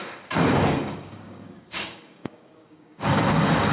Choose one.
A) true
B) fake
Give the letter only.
B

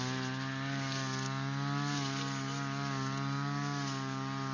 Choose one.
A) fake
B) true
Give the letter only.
B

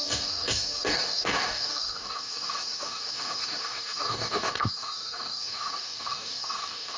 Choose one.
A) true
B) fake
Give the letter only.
B